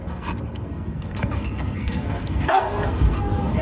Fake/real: fake